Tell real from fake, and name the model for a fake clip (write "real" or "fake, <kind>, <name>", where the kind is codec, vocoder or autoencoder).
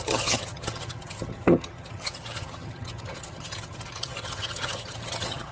fake, vocoder, HiFi-GAN